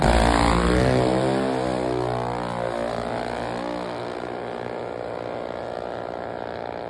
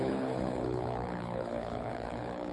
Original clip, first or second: first